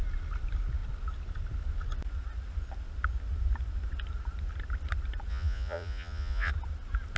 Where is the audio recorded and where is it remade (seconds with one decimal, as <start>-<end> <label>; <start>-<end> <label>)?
0.0-5.3 recorded; 5.3-6.5 remade; 6.5-7.2 recorded